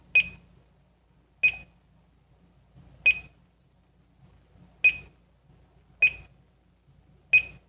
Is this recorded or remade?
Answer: recorded